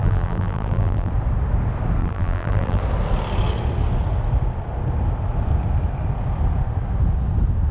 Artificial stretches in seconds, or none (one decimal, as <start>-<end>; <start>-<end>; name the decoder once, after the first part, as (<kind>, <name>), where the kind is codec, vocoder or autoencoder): 0.0-1.1 (vocoder, BigVGAN v2); 2.0-2.8